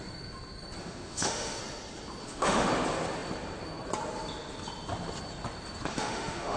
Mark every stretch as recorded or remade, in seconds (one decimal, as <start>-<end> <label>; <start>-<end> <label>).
0.0-0.8 recorded; 0.8-1.6 remade; 1.6-2.2 recorded; 2.2-2.7 remade; 2.7-5.9 recorded; 5.9-6.6 remade